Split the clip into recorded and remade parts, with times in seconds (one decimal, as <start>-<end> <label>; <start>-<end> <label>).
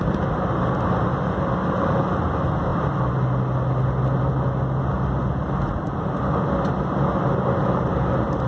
0.0-8.5 recorded